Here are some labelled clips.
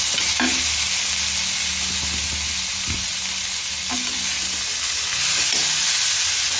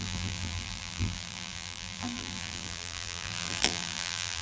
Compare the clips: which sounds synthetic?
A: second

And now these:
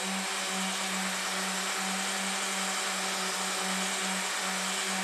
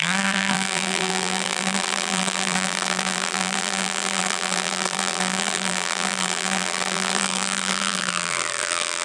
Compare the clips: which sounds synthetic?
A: second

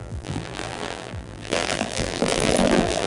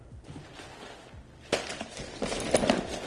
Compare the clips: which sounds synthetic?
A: first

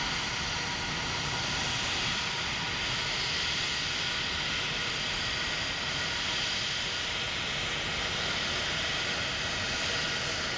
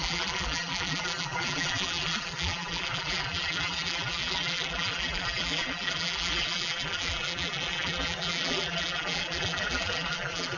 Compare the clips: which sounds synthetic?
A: second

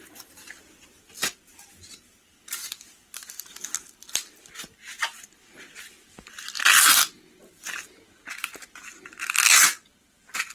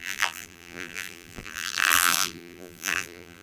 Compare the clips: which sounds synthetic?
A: second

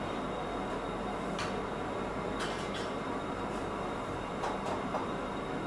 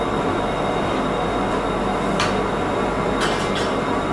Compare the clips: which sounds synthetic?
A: first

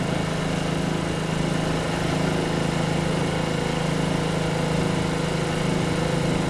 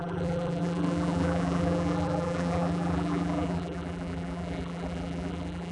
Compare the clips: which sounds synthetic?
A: second